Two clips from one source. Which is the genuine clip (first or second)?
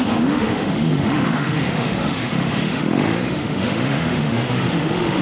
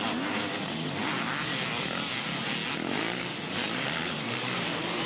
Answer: second